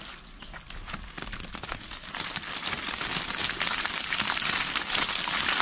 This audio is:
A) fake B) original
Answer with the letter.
B